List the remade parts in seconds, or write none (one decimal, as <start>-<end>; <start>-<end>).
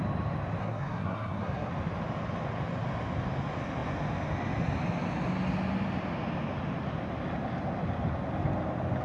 0.6-1.7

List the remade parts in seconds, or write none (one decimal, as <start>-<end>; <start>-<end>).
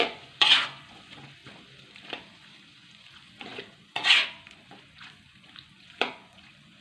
0.0-1.4; 2.3-6.8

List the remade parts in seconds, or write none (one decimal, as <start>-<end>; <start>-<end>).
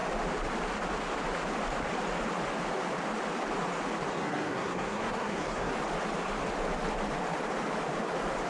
4.1-5.7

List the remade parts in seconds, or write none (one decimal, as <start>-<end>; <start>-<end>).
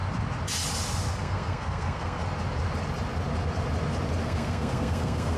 1.1-2.2; 4.2-5.4